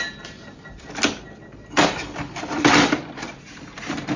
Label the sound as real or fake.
real